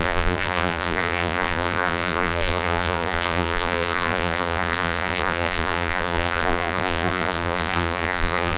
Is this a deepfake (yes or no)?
yes